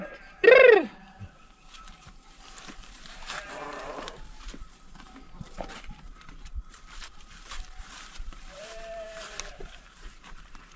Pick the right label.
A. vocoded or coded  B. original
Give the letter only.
A